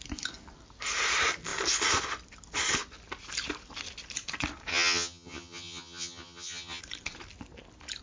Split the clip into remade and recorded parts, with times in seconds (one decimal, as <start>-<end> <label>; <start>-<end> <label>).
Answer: 0.0-4.7 recorded; 4.7-6.8 remade; 6.8-8.0 recorded